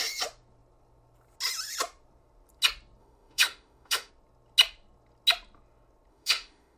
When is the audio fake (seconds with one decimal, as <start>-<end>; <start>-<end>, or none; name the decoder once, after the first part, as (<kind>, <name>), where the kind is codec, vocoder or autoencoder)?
3.0-4.1 (autoencoder, DAC-VAE); 6.1-6.8